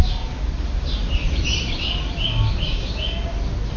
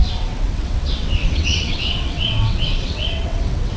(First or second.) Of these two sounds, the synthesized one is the second